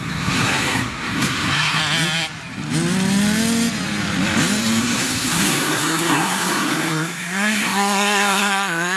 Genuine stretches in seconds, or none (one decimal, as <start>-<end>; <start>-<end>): 1.8-4.8